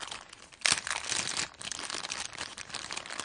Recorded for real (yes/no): yes